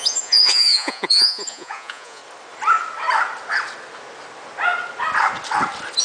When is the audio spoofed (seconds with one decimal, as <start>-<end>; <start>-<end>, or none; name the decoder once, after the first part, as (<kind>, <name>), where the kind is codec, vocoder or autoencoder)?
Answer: 0.0-2.2 (vocoder, Vocos)